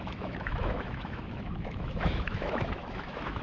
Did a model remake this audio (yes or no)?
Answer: yes